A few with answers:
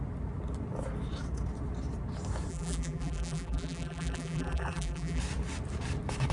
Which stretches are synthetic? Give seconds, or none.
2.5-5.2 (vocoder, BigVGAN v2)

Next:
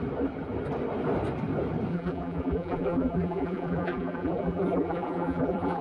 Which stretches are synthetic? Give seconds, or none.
1.9-5.8 (vocoder, BigVGAN v2)